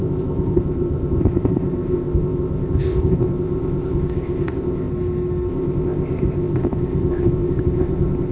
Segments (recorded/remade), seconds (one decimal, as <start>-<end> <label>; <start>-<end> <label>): 0.0-4.9 remade; 4.9-5.5 recorded; 5.5-8.3 remade